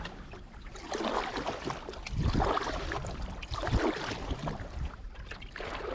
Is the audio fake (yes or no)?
yes